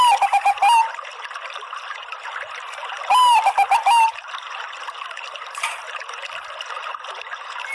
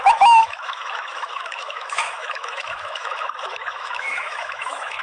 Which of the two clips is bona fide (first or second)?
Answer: first